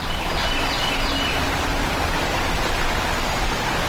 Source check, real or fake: real